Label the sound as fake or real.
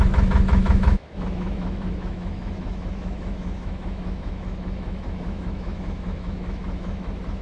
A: fake